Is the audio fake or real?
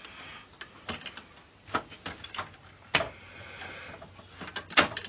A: real